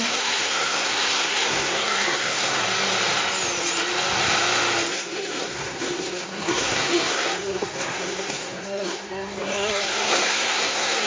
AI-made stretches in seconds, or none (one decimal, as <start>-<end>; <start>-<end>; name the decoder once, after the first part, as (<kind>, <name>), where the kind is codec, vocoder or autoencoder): 0.0-2.6 (codec, SNAC); 4.9-11.1